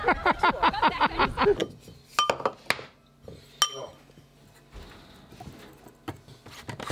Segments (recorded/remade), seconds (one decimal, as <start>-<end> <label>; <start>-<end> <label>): 0.0-6.9 recorded